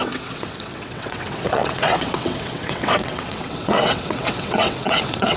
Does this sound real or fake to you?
fake